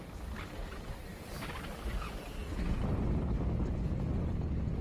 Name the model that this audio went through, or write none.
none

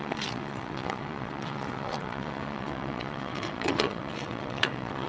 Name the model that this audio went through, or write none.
vocoder, WaveNeXt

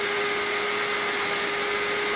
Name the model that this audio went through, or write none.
none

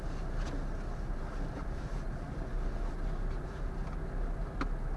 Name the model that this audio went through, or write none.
none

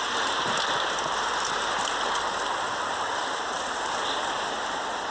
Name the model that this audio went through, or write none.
none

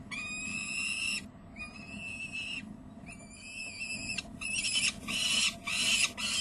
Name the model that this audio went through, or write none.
none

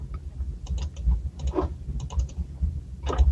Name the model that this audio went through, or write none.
none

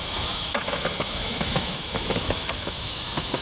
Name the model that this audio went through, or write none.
autoencoder, DAC-VAE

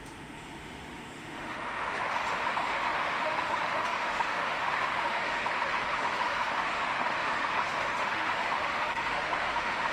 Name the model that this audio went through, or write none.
autoencoder, DAC-VAE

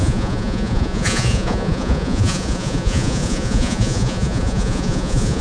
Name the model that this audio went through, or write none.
vocoder, Vocos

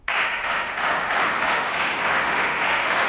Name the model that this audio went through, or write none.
autoencoder, DAC-VAE